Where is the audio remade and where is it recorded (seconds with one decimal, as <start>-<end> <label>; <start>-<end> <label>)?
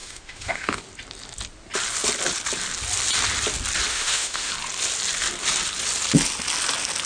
0.0-0.8 remade; 0.8-3.9 recorded; 3.9-4.5 remade; 4.5-7.0 recorded